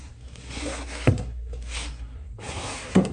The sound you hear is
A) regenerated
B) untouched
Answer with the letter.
A